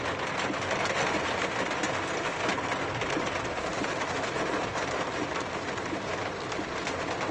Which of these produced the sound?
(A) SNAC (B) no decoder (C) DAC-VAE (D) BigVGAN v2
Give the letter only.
B